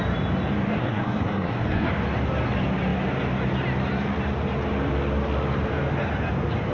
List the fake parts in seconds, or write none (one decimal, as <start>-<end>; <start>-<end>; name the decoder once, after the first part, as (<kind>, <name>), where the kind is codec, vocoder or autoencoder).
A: 0.7-1.9 (codec, SNAC)